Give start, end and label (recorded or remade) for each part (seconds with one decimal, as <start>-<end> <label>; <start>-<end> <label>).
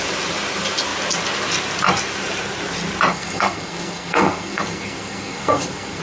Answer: 0.0-3.1 recorded; 3.1-6.0 remade